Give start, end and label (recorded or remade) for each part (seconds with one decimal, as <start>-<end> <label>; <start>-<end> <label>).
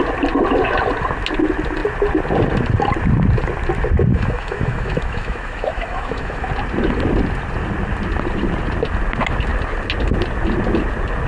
0.0-4.1 recorded; 4.1-6.5 remade; 6.5-11.3 recorded